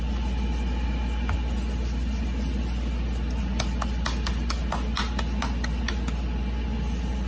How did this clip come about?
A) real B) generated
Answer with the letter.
A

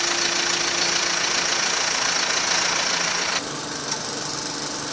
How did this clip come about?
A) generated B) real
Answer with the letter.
B